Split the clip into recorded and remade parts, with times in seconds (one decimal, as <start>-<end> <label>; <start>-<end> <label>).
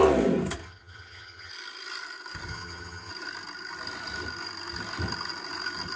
0.0-0.6 recorded; 0.6-1.5 remade; 1.5-2.5 recorded; 2.5-3.1 remade; 3.1-6.0 recorded